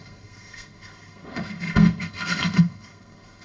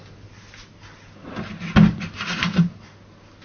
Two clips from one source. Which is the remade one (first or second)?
first